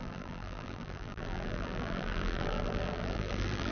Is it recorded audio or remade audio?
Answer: remade